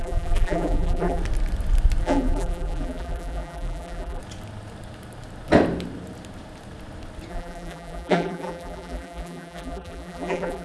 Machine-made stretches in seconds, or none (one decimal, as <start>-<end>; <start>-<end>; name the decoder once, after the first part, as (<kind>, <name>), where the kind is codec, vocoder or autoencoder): 0.0-1.2 (vocoder, BigVGAN v2); 2.0-4.2; 7.3-10.6